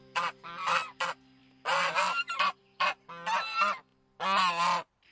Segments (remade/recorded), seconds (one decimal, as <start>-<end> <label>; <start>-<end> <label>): 0.0-5.1 recorded